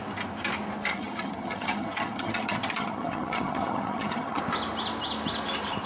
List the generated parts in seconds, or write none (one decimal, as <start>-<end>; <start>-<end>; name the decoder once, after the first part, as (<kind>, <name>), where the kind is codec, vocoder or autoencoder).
0.9-4.4 (vocoder, HiFi-GAN)